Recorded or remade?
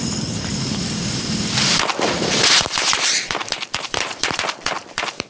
remade